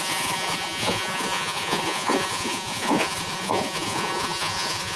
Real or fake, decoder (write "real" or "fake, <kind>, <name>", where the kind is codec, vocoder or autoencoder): fake, vocoder, Vocos